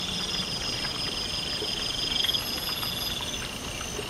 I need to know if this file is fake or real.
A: real